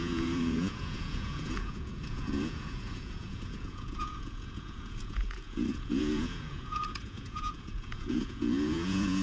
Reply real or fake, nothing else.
fake